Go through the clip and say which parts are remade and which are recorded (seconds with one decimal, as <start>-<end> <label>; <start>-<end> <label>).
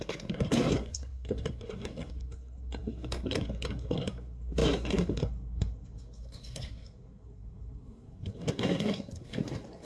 0.0-9.8 remade